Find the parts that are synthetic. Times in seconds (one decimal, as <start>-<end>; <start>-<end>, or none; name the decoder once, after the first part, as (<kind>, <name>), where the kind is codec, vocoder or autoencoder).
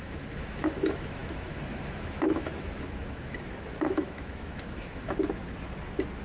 0.0-5.4 (autoencoder, DAC-VAE)